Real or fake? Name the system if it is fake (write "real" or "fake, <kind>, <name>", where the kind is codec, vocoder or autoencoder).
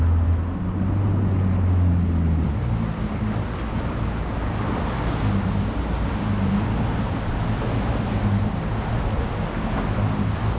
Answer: real